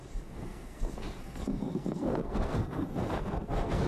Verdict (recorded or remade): remade